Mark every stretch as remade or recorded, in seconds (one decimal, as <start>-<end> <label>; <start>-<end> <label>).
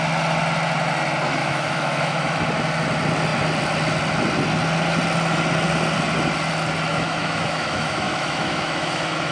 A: 0.0-1.4 recorded; 1.4-2.4 remade; 2.4-6.9 recorded; 6.9-9.3 remade